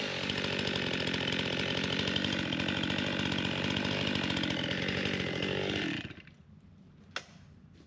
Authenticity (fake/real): real